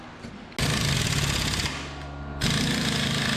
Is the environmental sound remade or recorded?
recorded